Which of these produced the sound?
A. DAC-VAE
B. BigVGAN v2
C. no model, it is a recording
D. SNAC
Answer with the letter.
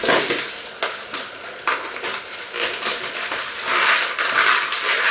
C